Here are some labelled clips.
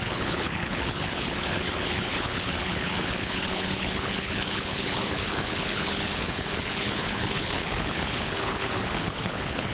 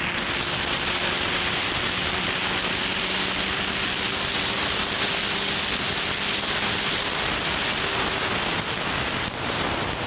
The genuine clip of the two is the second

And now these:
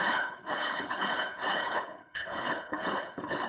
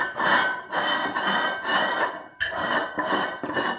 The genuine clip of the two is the second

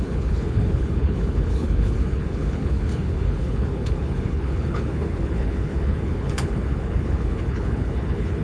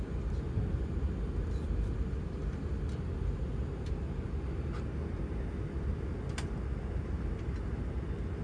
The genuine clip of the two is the second